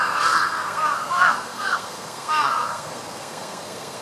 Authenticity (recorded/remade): remade